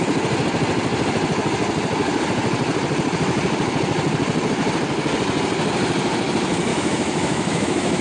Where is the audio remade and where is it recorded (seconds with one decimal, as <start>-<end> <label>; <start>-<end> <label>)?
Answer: 0.0-6.7 recorded; 6.7-8.0 remade